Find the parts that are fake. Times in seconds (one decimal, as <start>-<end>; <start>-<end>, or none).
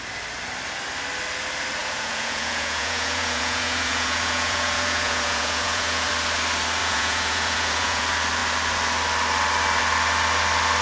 1.8-6.1; 6.8-8.0